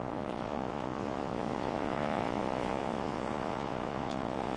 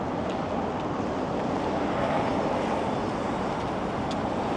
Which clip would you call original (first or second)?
second